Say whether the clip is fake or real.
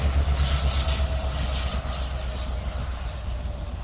real